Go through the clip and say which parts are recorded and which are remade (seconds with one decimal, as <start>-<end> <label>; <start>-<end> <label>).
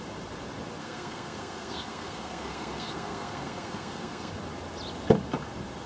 0.0-0.8 recorded; 0.8-4.3 remade; 4.3-5.9 recorded